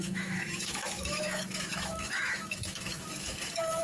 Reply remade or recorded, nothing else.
remade